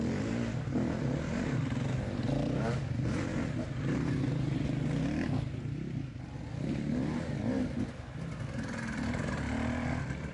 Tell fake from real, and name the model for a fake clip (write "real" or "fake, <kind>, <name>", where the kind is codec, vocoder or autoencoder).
real